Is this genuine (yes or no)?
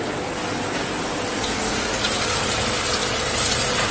yes